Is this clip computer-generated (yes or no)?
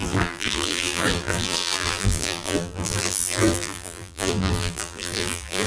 yes